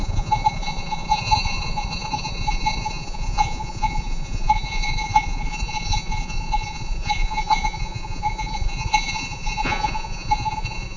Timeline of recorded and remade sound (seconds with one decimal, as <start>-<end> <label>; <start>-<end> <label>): 0.0-11.0 remade